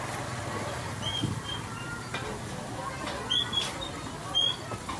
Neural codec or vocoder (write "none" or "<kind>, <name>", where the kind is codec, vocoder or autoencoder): none